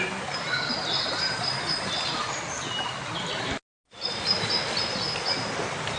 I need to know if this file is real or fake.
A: real